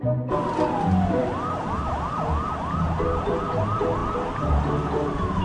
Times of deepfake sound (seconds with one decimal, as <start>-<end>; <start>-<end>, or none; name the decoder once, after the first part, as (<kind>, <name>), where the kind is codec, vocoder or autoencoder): none